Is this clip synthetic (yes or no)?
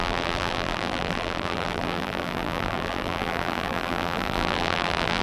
yes